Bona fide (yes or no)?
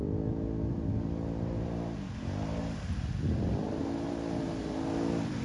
yes